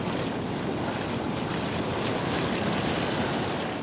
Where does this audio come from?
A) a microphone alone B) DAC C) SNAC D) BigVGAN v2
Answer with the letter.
A